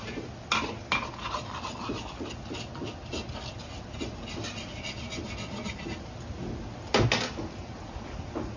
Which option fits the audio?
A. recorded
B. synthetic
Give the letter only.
A